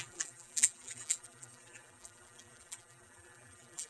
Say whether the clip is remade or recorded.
remade